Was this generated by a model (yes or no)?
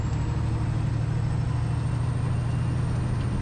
no